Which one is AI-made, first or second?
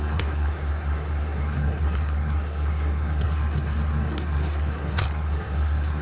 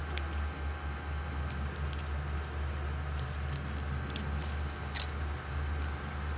first